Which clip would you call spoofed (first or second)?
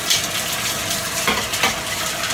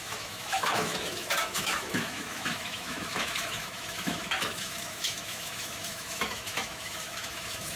second